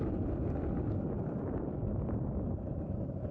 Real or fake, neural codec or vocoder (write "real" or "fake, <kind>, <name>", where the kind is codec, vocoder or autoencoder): fake, vocoder, BigVGAN v2